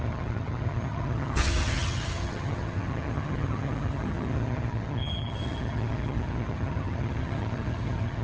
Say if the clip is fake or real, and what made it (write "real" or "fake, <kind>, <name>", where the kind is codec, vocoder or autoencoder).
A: fake, vocoder, HiFi-GAN